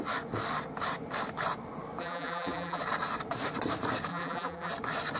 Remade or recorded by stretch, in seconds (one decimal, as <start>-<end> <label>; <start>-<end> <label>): 0.0-2.0 recorded; 2.0-2.8 remade; 2.8-4.1 recorded; 4.1-4.7 remade; 4.7-5.2 recorded